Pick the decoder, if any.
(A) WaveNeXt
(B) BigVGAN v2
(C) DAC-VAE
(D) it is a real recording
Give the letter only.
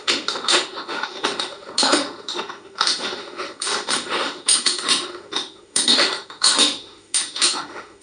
C